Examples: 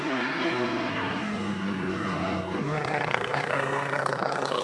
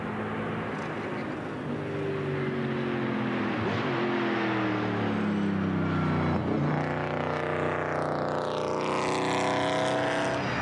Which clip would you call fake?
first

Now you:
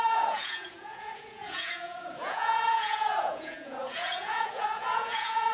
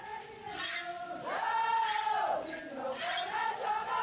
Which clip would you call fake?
first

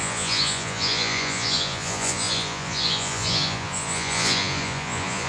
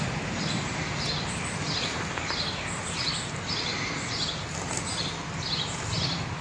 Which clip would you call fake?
first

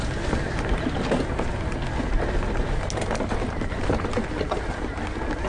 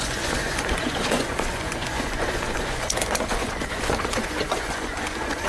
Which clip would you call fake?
second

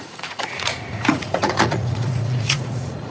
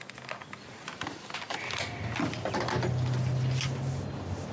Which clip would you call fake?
first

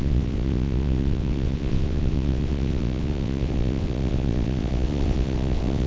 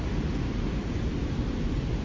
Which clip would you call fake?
first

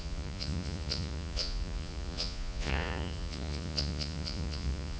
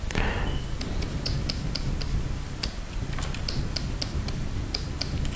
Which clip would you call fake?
first